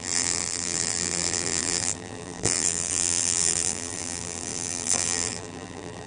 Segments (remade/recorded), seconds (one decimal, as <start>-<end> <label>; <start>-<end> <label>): 0.0-6.1 remade